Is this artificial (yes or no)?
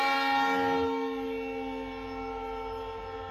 no